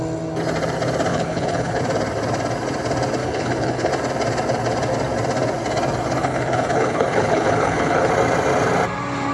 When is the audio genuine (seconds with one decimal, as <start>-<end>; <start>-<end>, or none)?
0.0-1.1; 1.8-3.2; 3.9-6.2; 8.1-9.3